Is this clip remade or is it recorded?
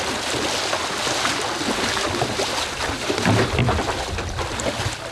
recorded